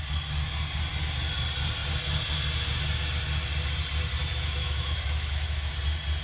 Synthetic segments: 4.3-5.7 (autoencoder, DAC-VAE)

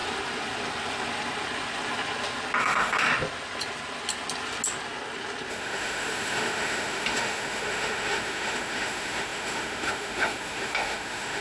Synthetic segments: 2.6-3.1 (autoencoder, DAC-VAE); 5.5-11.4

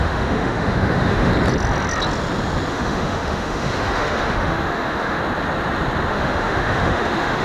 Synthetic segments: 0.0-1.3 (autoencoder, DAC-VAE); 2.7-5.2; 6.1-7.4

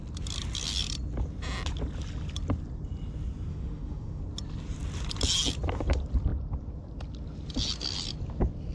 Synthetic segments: 3.5-4.2 (autoencoder, DAC-VAE)

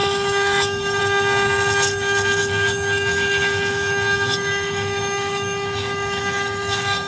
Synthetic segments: 0.0-1.0 (autoencoder, DAC-VAE); 2.4-7.1